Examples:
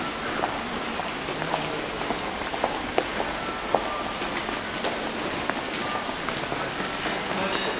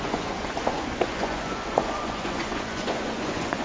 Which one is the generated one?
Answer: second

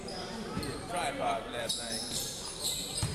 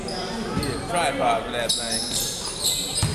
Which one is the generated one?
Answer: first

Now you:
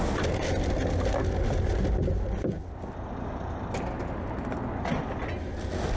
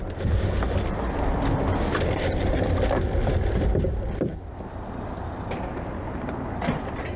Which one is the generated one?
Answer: second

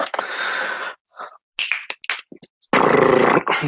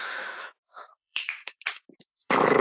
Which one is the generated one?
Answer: second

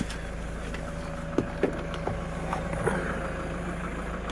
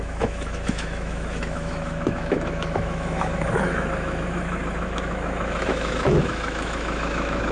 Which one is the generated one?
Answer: second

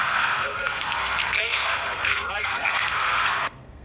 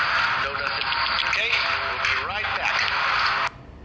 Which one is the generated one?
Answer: first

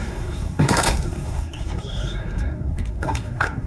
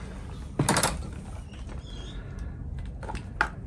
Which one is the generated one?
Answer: first